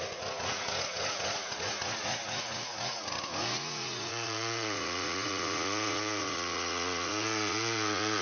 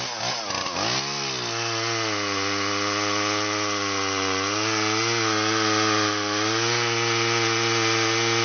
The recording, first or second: second